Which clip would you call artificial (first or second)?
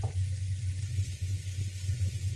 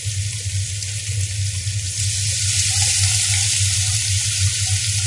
first